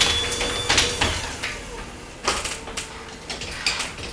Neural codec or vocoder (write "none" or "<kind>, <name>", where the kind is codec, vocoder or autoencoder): none